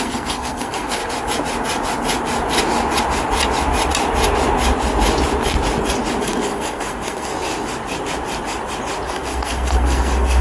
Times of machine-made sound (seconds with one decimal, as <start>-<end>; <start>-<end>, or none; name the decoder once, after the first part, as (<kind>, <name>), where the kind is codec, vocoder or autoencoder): 0.0-1.0 (codec, SNAC); 6.2-7.3; 9.1-10.4